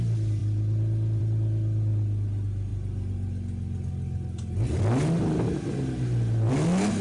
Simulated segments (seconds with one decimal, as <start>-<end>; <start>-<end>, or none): none